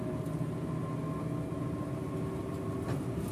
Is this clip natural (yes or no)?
yes